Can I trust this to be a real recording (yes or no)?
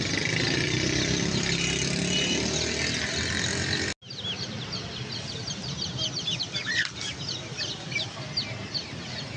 yes